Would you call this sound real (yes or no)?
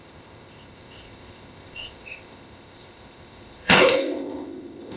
no